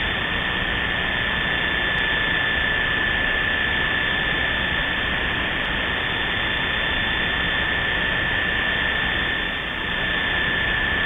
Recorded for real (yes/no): yes